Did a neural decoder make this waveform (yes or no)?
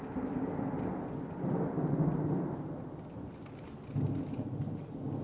no